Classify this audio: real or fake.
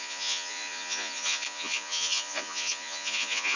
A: fake